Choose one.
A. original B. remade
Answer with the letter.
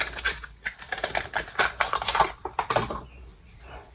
B